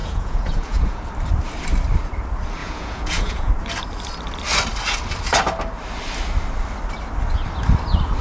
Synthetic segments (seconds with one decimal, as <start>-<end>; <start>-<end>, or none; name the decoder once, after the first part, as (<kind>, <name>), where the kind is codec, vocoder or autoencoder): 0.0-1.1 (vocoder, Vocos); 2.6-3.5